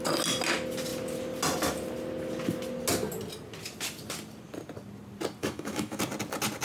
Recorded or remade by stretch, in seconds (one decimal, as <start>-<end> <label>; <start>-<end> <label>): 0.0-5.4 recorded; 5.4-6.0 remade; 6.0-6.6 recorded